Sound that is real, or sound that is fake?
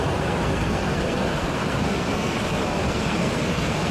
fake